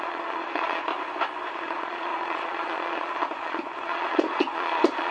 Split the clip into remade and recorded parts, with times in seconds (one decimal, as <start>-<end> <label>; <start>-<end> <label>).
0.0-0.9 remade; 0.9-1.5 recorded; 1.5-5.1 remade